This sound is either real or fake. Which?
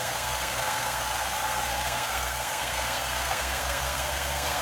fake